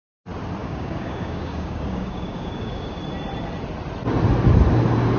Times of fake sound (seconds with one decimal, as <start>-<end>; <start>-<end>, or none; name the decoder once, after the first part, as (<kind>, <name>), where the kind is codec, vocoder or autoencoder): 0.6-3.0 (codec, DAC)